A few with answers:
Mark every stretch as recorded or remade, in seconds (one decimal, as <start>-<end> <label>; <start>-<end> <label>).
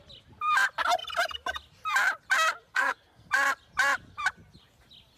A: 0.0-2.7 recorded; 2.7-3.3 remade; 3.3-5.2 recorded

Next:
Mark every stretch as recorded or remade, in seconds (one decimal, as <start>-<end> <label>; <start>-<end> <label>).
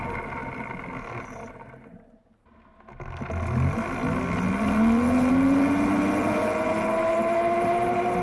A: 0.0-8.2 recorded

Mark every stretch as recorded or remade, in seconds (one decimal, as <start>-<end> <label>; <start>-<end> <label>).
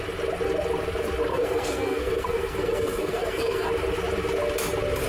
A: 0.0-1.3 recorded; 1.3-3.7 remade; 3.7-5.1 recorded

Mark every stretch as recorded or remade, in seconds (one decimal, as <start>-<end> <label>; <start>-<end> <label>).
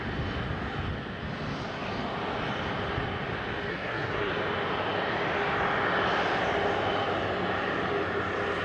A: 0.0-3.7 recorded; 3.7-4.3 remade; 4.3-8.6 recorded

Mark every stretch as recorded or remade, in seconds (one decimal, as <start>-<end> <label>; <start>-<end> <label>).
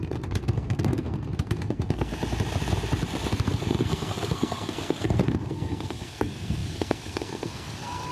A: 0.0-2.1 remade; 2.1-3.3 recorded; 3.3-8.1 remade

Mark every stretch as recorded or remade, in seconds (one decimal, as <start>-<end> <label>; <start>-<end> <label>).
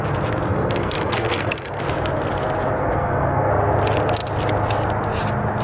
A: 0.0-0.5 recorded; 0.5-1.8 remade; 1.8-2.8 recorded; 2.8-3.5 remade; 3.5-5.6 recorded